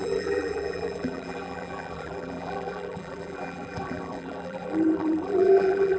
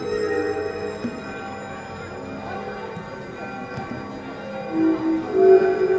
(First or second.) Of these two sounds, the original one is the second